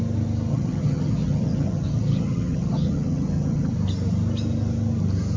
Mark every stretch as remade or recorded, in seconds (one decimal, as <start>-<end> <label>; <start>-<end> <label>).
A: 0.0-0.5 recorded; 0.5-3.7 remade; 3.7-5.4 recorded